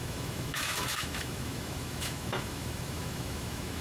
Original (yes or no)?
no